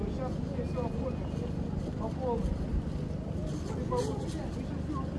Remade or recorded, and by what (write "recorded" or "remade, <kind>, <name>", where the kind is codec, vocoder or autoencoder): recorded